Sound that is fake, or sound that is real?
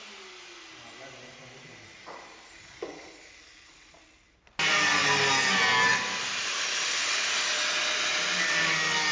real